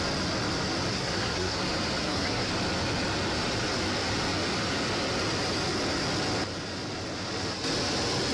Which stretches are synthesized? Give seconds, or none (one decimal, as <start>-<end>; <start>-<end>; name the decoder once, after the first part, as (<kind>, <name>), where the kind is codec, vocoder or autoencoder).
0.9-1.6 (codec, SNAC); 2.0-2.5